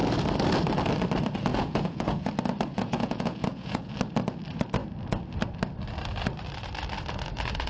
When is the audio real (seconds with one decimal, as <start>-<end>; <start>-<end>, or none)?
0.0-1.5; 2.3-2.7; 3.9-7.7